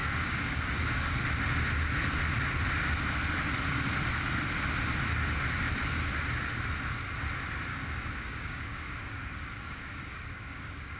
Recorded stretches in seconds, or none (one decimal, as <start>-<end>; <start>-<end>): 1.2-7.7